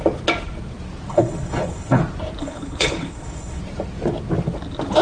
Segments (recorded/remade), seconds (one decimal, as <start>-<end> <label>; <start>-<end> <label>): 0.0-1.1 recorded; 1.1-2.0 remade; 2.0-2.4 recorded; 2.4-3.6 remade; 3.6-5.0 recorded